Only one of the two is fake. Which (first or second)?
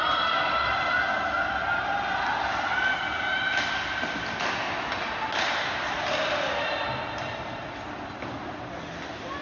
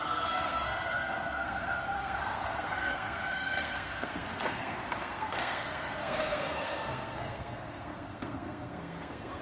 second